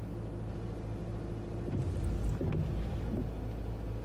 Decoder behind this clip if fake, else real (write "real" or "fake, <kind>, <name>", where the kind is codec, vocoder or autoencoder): real